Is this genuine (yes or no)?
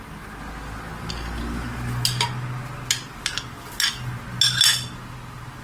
yes